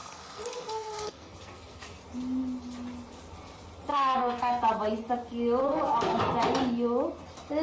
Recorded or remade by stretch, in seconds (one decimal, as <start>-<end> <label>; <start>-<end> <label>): 0.0-2.0 remade; 2.0-3.9 recorded; 3.9-4.6 remade; 4.6-5.6 recorded; 5.6-6.2 remade; 6.2-7.6 recorded